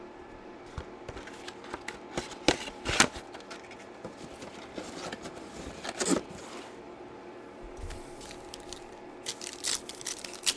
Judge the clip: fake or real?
real